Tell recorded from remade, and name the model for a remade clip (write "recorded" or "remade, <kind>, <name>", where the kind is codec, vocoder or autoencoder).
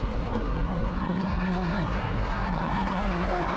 remade, codec, SNAC